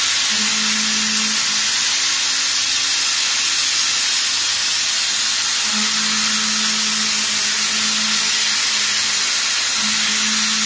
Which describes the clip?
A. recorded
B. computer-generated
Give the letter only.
A